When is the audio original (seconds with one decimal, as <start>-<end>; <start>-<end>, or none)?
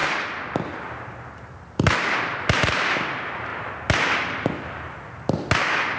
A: 0.0-6.0